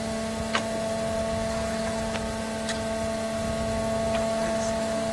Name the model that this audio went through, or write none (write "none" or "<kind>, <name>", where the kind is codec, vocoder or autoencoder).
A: none